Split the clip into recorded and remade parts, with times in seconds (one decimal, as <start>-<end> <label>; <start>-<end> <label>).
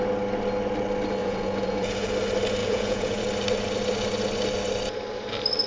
0.0-1.2 recorded; 1.2-2.1 remade; 2.1-2.6 recorded; 2.6-3.2 remade; 3.2-5.7 recorded